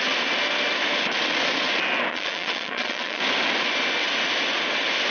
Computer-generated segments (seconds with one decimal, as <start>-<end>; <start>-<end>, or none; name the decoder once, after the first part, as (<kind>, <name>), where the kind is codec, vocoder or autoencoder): 2.1-3.2 (vocoder, Vocos)